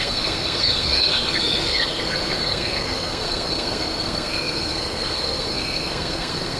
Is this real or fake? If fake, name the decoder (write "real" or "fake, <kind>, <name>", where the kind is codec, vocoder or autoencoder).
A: fake, codec, SNAC